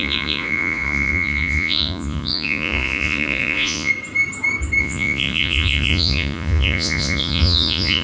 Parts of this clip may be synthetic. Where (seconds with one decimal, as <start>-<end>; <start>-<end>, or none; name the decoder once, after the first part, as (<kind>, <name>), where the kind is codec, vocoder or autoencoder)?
0.0-3.9 (vocoder, Vocos); 4.8-8.0